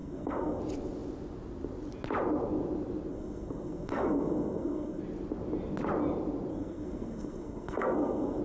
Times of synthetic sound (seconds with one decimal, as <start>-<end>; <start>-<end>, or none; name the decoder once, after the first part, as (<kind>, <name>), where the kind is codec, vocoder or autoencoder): 0.0-0.6 (codec, SNAC); 3.1-5.0; 6.5-8.4